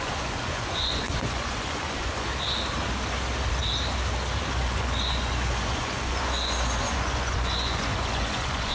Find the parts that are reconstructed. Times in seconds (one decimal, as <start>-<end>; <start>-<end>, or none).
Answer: 0.0-2.3; 4.5-8.7